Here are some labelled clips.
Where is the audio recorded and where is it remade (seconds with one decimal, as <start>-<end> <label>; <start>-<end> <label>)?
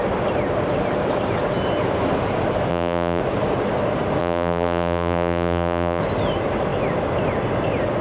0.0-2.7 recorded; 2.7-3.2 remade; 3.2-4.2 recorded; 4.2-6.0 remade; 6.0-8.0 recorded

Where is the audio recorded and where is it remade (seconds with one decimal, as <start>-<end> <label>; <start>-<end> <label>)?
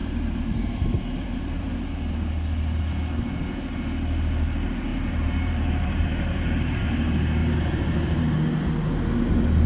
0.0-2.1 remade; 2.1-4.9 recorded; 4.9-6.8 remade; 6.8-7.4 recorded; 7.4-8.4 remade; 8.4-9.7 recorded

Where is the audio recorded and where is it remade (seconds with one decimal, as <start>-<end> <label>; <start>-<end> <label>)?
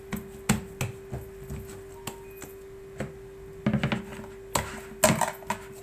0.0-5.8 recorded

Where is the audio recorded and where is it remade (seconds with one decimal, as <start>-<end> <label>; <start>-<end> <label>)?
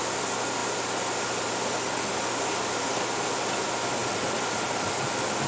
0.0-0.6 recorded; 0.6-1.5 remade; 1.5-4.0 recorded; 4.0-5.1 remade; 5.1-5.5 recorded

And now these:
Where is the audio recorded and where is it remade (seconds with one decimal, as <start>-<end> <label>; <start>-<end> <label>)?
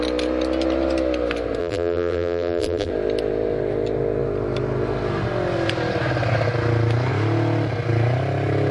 0.0-1.6 recorded; 1.6-2.9 remade; 2.9-8.7 recorded